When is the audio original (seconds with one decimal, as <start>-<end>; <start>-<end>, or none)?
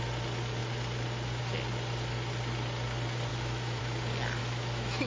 0.0-3.3; 3.8-4.4